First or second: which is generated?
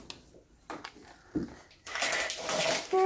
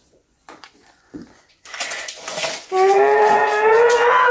second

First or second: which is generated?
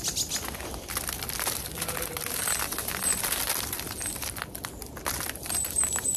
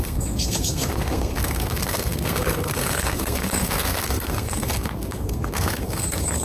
second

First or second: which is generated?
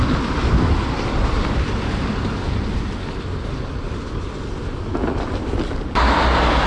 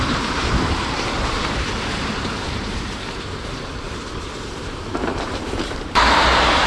second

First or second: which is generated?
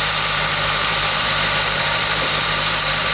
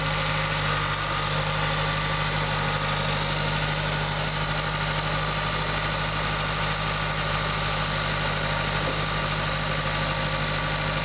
first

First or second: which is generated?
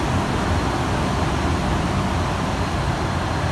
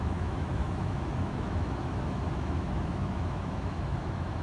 second